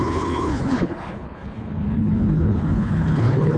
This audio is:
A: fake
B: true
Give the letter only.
A